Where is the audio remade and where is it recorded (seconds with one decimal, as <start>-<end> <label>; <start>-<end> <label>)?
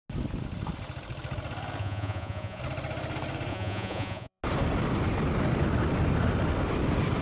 0.0-1.8 recorded; 1.8-2.6 remade; 2.6-3.5 recorded; 3.5-4.4 remade; 4.4-7.2 recorded